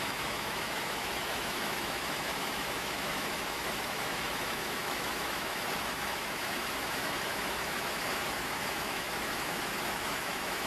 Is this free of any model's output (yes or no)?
no